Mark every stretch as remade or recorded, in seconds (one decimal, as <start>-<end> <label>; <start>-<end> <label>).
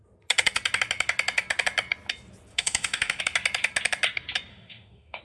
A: 0.0-2.5 recorded; 2.5-3.2 remade; 3.2-4.5 recorded; 4.5-5.2 remade